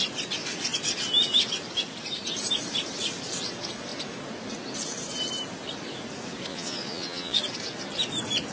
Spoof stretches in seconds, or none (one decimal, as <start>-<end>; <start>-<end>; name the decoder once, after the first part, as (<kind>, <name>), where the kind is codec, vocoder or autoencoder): 6.5-7.4 (vocoder, Vocos)